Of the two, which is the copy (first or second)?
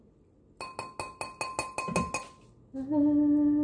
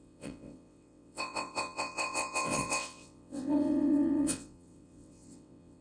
second